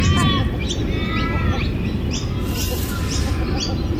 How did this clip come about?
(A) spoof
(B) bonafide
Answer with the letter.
B